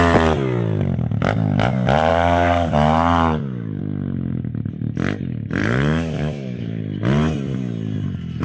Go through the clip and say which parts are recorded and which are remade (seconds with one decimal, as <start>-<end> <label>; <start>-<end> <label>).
0.0-2.1 recorded; 2.1-3.8 remade; 3.8-5.6 recorded; 5.6-6.8 remade; 6.8-8.4 recorded